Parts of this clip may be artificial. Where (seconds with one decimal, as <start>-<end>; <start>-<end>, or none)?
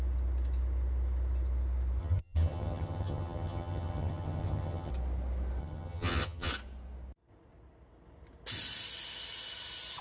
2.0-4.9; 5.6-6.5